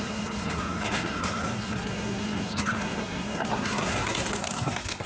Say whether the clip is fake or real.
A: fake